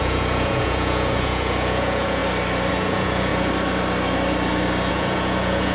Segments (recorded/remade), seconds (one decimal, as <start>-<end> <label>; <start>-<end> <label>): 0.0-2.2 remade; 2.2-2.7 recorded; 2.7-3.3 remade; 3.3-4.9 recorded; 4.9-5.7 remade